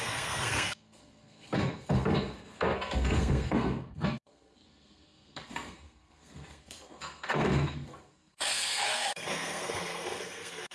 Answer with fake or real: fake